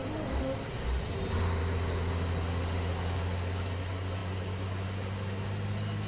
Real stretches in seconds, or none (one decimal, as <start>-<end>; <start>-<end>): 0.0-6.1